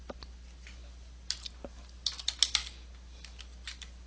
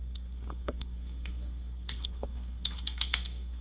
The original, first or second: first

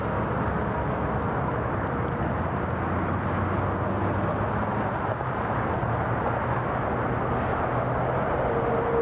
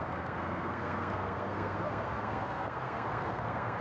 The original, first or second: first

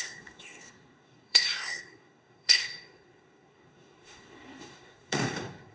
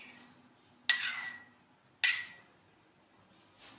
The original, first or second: second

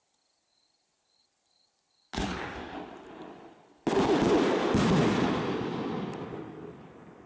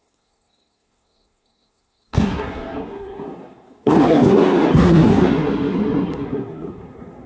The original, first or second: first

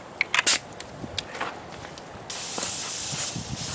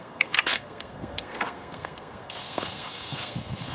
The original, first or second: first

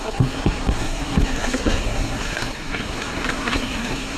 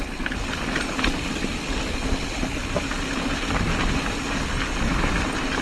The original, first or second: second